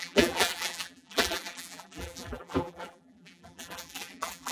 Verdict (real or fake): fake